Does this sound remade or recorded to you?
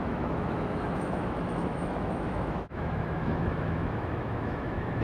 remade